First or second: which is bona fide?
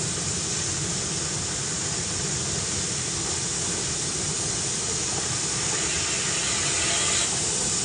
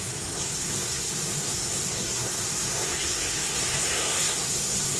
first